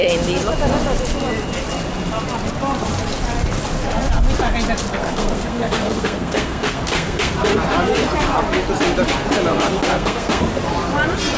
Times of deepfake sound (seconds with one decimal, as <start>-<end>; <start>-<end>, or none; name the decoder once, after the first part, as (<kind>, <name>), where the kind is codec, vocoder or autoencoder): 4.9-7.3 (codec, SNAC); 9.5-10.4